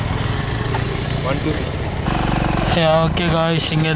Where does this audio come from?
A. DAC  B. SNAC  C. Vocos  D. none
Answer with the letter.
D